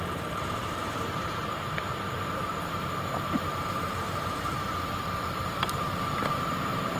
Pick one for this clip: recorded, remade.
remade